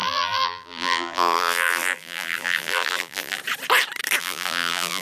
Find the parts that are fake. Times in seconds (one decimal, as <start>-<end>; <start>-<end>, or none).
0.0-3.4; 4.2-5.0